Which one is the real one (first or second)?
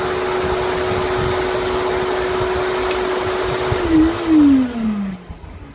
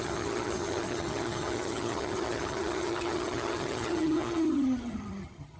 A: first